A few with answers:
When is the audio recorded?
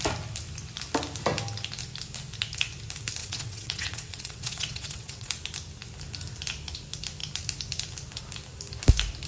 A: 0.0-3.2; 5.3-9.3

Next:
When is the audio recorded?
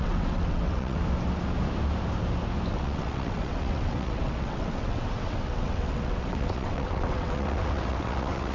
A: 1.0-2.7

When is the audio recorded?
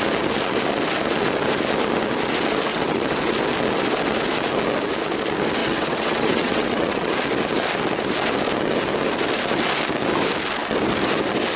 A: 0.0-2.7; 3.4-5.6; 7.1-11.6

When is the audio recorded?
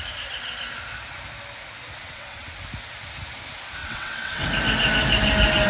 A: 0.0-2.0; 2.5-3.8; 4.5-5.7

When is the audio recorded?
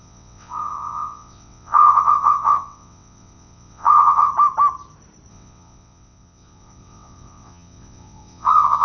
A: 4.3-5.3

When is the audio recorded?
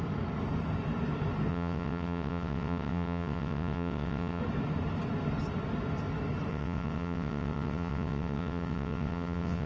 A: 0.0-1.5; 4.4-6.5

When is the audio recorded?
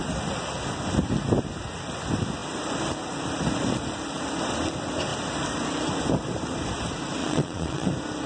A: 0.0-7.2; 7.9-8.3